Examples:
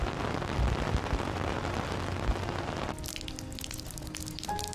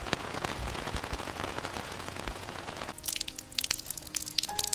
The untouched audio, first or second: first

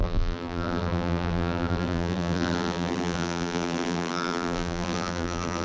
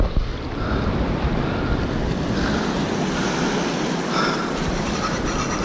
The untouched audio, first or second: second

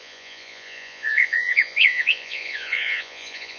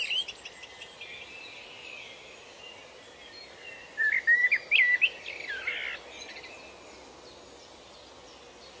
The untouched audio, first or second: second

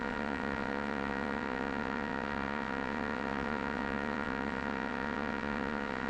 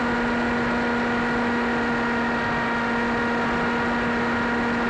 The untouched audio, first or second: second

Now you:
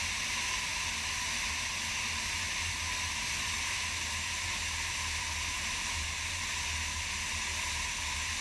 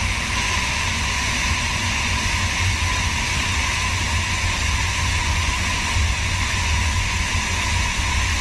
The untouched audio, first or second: first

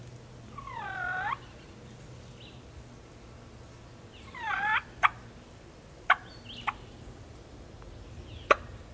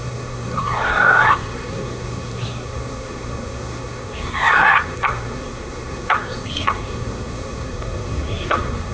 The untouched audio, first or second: first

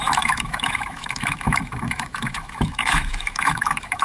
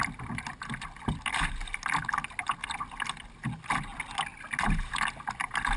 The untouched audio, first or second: second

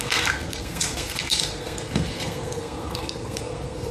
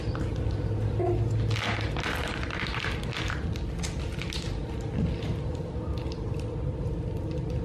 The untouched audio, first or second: second